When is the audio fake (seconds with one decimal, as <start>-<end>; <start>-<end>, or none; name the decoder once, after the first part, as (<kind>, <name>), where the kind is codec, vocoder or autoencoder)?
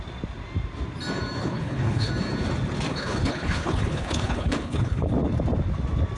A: 1.4-2.1 (codec, HILCodec); 2.9-5.1